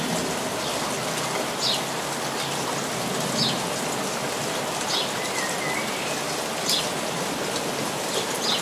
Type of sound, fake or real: real